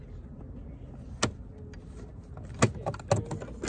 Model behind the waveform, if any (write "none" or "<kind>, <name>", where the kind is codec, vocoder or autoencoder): none